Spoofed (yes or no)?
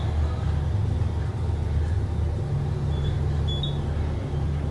no